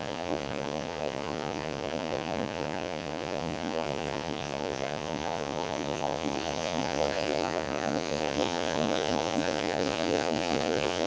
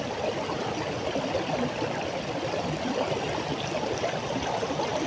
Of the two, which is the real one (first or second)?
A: second